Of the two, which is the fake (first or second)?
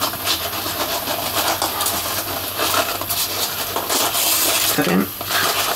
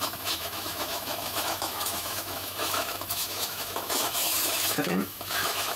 second